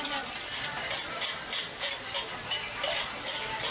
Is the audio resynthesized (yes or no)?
yes